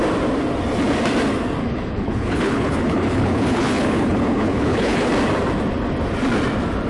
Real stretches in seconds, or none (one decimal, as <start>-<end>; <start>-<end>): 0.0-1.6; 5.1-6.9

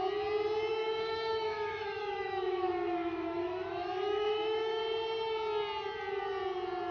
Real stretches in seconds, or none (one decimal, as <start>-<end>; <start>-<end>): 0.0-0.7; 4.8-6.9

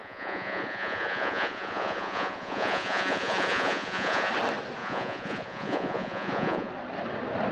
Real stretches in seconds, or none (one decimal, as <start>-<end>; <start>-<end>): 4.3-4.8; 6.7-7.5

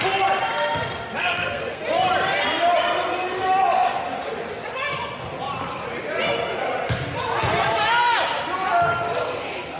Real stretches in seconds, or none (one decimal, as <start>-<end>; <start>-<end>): 0.0-1.2; 1.8-9.8

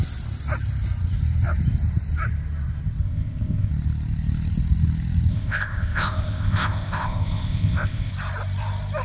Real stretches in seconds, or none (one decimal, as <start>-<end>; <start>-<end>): 0.0-3.0; 3.7-5.3; 8.1-9.0

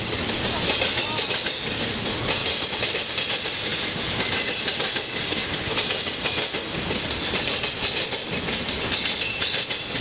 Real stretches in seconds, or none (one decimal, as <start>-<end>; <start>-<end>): 0.0-2.4; 3.1-3.7; 4.6-5.4; 6.2-10.0

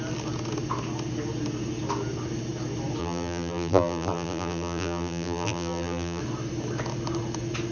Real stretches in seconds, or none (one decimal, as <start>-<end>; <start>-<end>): 0.0-3.0; 6.2-7.7

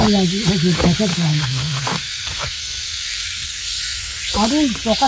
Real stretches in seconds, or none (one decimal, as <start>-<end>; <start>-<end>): 0.0-1.1; 4.2-5.1